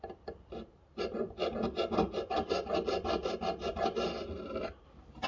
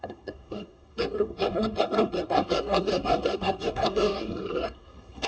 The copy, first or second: second